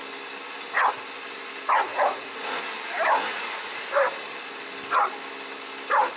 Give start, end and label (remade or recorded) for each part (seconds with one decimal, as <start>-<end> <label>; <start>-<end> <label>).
0.0-1.9 recorded; 1.9-2.6 remade; 2.6-3.3 recorded; 3.3-3.9 remade; 3.9-6.2 recorded